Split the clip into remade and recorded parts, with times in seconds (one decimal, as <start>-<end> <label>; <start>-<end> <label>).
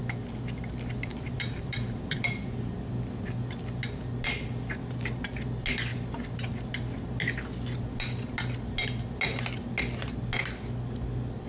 0.0-1.1 recorded; 1.1-2.7 remade; 2.7-5.9 recorded; 5.9-6.5 remade; 6.5-11.5 recorded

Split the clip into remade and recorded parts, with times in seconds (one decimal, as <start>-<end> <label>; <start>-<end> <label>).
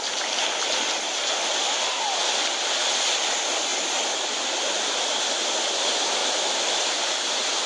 0.0-2.2 recorded; 2.2-2.8 remade; 2.8-3.7 recorded; 3.7-4.9 remade; 4.9-6.2 recorded; 6.2-7.1 remade; 7.1-7.7 recorded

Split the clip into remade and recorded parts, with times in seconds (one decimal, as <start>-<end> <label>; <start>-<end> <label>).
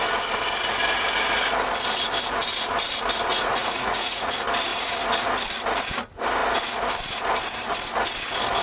0.0-3.3 recorded; 3.3-4.3 remade; 4.3-8.6 recorded